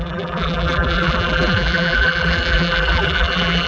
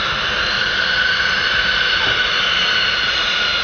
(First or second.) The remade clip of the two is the first